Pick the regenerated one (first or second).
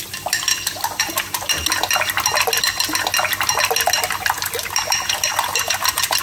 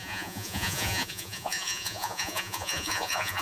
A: second